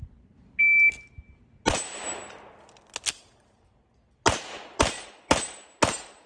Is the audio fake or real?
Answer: real